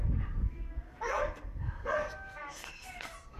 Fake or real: fake